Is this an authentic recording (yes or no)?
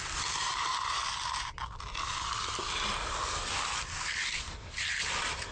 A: yes